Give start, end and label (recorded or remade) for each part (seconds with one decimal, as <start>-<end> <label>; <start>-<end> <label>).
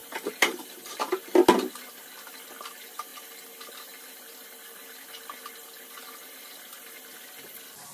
0.0-1.2 remade; 1.2-7.9 recorded